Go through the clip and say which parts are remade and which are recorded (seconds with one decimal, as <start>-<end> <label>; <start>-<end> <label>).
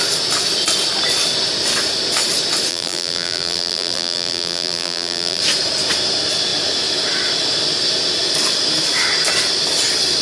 0.0-2.7 recorded; 2.7-5.4 remade; 5.4-10.2 recorded